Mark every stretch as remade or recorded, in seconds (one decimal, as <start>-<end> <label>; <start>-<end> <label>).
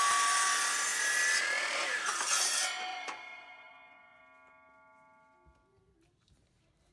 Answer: 0.0-2.9 recorded; 2.9-4.2 remade; 4.2-6.9 recorded